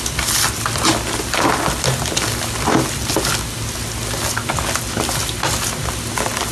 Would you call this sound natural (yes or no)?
yes